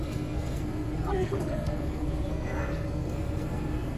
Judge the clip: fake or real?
fake